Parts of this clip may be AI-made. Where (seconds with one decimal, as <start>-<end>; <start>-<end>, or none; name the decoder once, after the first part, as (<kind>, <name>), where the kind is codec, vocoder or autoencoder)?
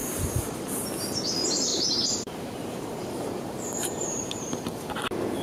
0.0-0.9 (vocoder, BigVGAN v2); 1.7-4.9